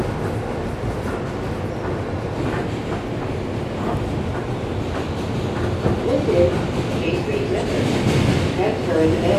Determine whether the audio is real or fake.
real